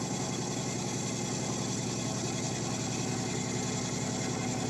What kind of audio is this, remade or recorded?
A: recorded